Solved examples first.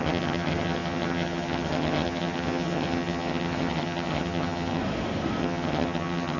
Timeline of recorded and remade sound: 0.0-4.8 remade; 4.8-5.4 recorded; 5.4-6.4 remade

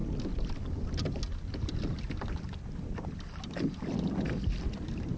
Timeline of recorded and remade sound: 0.0-5.2 recorded

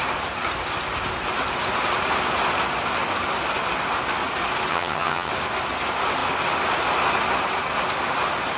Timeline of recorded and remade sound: 0.0-4.7 recorded; 4.7-5.3 remade; 5.3-8.6 recorded